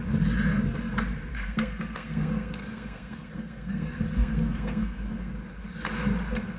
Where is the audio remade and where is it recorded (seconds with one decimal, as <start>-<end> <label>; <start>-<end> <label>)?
0.0-1.3 recorded; 1.3-5.3 remade; 5.3-6.6 recorded